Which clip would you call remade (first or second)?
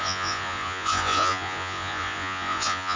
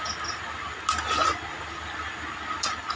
first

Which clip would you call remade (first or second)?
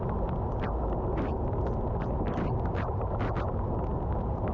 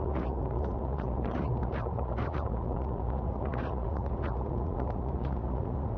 second